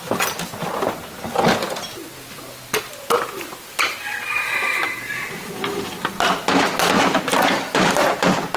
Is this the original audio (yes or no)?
yes